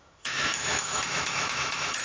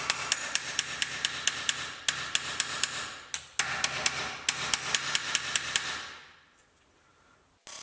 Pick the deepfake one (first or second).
first